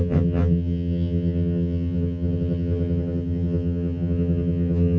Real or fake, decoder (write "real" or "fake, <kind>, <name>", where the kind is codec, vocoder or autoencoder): fake, vocoder, HiFi-GAN